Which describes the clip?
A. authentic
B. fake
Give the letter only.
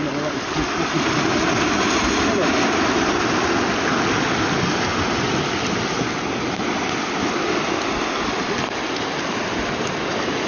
A